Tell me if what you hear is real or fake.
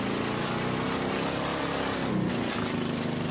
real